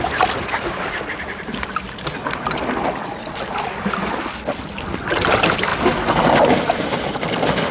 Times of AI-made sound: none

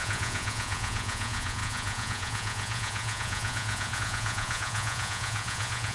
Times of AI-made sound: 0.0-5.9 (vocoder, Vocos)

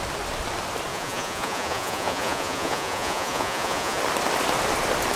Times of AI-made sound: 0.9-4.0 (vocoder, Vocos)

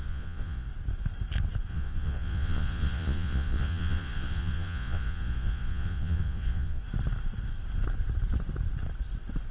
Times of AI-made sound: 0.0-0.7 (vocoder, Vocos); 1.7-6.8

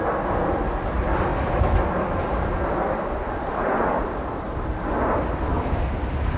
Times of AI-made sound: none

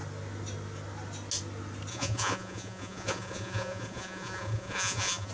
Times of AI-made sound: 1.9-5.3 (vocoder, Vocos)